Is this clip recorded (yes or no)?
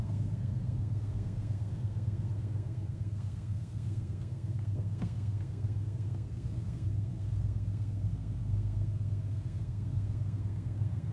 no